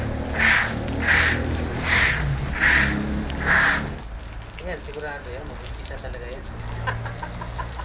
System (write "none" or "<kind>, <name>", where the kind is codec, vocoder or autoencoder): none